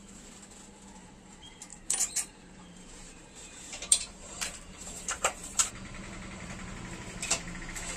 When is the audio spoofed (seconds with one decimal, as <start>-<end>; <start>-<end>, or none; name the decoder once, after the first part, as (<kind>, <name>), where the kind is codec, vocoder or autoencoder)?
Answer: 1.7-5.7 (vocoder, BigVGAN v2)

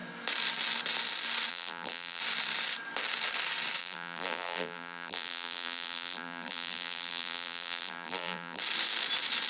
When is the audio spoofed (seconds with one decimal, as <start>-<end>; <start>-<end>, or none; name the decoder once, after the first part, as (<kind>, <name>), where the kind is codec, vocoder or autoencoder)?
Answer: 1.5-2.2 (vocoder, BigVGAN v2); 3.8-8.6

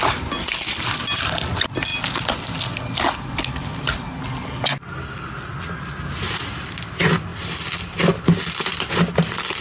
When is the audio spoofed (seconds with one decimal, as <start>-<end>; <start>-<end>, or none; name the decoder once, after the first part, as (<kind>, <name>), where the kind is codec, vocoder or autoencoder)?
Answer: none

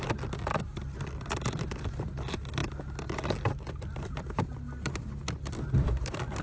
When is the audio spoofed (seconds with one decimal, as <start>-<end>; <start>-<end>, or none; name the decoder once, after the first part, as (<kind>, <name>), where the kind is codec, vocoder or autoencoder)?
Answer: 0.0-2.6 (vocoder, BigVGAN v2); 3.7-6.4

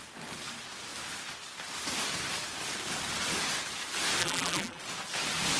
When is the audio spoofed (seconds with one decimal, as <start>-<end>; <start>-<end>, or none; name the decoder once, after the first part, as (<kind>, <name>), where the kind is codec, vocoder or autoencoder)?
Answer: 4.2-4.8 (vocoder, BigVGAN v2)

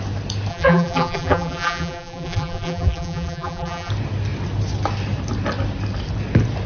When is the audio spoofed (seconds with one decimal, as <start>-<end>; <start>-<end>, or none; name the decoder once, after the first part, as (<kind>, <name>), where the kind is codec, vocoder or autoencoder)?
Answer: 0.5-3.9 (vocoder, BigVGAN v2)

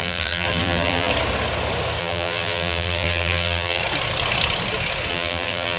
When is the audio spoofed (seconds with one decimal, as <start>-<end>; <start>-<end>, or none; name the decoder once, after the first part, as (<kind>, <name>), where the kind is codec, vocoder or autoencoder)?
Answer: 0.0-1.1 (vocoder, BigVGAN v2); 2.0-3.8; 5.1-5.8

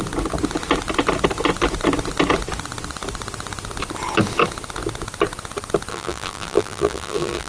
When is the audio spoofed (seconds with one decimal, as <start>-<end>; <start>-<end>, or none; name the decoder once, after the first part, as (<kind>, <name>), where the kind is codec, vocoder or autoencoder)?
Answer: 5.9-7.5 (vocoder, BigVGAN v2)